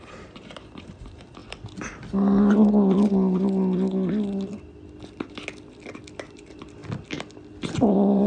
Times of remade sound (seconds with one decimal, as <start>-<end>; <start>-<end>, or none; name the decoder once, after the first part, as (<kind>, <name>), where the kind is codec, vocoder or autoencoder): 0.0-1.4 (vocoder, BigVGAN v2); 6.2-6.8; 7.7-8.3